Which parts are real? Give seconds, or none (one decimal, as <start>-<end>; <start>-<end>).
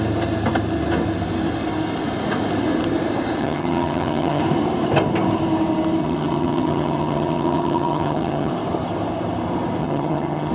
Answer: 0.0-3.4; 4.4-6.0; 8.5-9.8